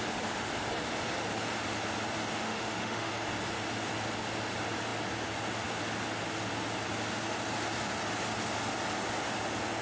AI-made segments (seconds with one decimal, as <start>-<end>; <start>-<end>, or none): 2.4-3.1